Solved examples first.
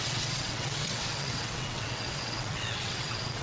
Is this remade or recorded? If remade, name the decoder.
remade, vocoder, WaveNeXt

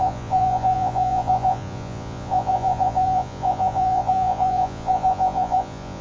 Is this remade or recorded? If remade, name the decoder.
remade, vocoder, Vocos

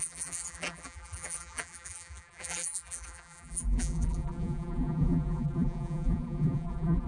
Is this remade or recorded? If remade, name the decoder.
remade, vocoder, BigVGAN v2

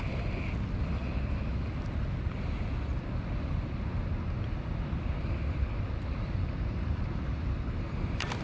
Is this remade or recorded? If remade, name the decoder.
recorded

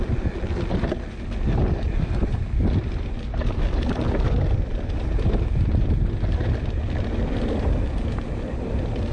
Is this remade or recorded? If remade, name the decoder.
recorded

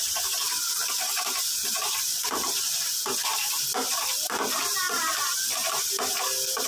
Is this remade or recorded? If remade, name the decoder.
recorded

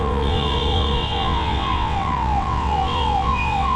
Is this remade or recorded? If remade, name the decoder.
remade, vocoder, WaveNeXt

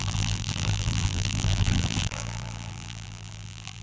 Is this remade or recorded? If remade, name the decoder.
remade, vocoder, BigVGAN v2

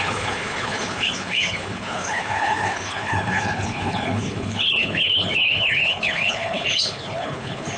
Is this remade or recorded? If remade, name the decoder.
remade, codec, HILCodec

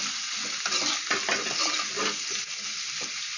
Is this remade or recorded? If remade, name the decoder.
recorded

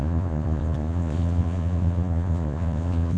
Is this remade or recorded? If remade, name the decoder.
remade, vocoder, Vocos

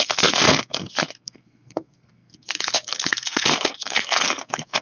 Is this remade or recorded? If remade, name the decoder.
remade, codec, SNAC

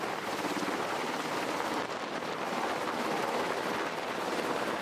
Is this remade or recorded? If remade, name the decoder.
remade, vocoder, BigVGAN v2